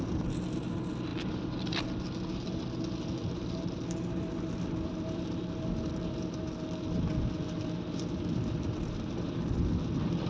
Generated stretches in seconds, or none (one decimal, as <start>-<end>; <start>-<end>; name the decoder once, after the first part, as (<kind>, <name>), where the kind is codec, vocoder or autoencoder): none

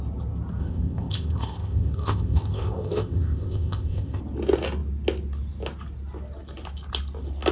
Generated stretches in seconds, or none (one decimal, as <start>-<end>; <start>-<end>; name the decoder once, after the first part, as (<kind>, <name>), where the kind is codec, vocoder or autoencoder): 0.6-4.2 (codec, ZipCodec)

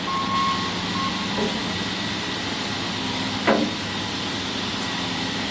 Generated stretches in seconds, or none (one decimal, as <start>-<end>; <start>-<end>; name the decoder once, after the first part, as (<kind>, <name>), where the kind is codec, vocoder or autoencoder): none

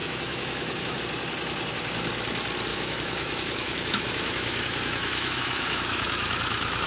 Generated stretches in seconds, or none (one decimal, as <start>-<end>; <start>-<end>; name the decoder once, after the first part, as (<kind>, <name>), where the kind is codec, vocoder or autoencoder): 0.0-1.0 (autoencoder, DAC-VAE); 2.7-6.9

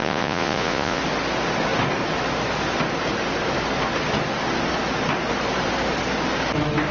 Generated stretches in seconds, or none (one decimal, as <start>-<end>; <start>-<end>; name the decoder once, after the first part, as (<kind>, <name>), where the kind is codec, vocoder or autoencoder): 0.0-1.0 (vocoder, Vocos)

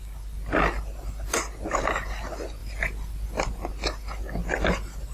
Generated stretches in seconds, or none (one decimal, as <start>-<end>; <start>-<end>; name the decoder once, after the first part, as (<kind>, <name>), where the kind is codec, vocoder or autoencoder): none

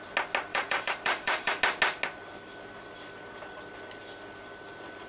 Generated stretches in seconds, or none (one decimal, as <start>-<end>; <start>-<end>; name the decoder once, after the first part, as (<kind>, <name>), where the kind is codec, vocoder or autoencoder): 0.5-1.5 (vocoder, BigVGAN v2)